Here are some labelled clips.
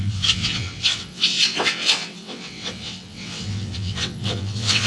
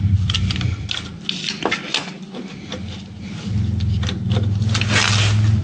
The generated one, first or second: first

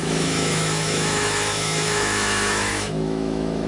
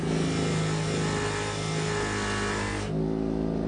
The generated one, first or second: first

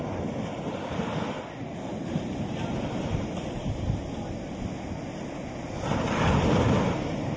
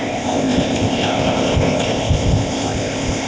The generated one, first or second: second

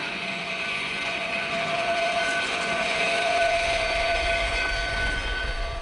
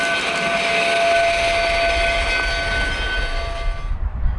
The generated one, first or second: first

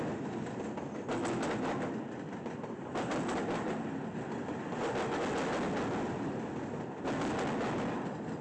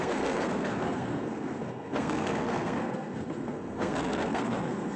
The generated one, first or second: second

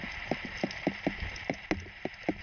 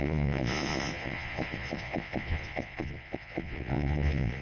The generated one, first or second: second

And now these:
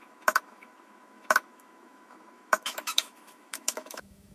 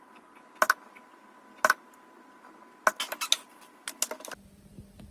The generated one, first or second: first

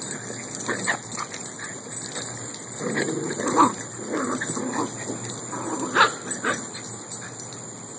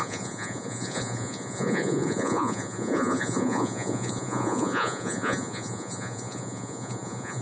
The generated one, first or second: second